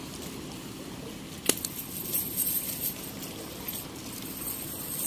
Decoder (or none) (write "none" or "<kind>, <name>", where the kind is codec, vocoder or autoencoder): none